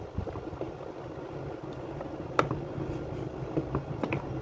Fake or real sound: real